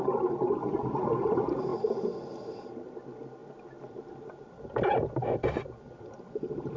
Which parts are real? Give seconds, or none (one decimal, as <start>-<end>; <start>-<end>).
0.0-6.8